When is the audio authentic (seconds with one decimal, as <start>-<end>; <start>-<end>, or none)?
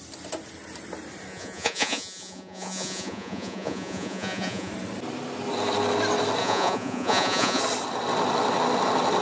0.0-1.3; 4.7-6.4; 7.6-9.2